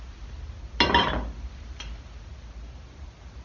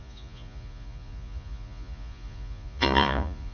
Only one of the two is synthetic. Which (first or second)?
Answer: second